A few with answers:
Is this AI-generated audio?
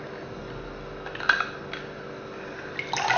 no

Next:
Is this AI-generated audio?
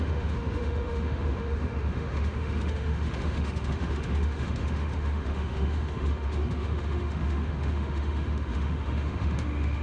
yes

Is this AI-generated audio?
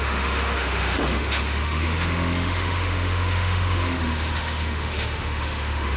yes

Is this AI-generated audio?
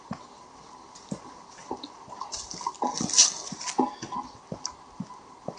no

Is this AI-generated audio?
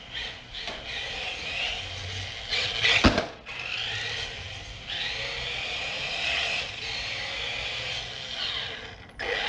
no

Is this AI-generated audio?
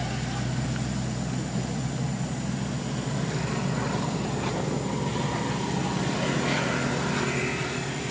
no